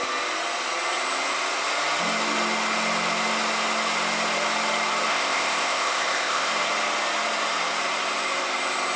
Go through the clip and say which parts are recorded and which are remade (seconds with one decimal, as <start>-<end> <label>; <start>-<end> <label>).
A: 0.0-5.1 recorded; 5.1-6.5 remade; 6.5-9.0 recorded